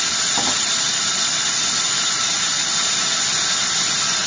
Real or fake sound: real